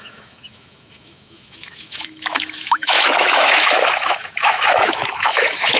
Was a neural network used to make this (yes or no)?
yes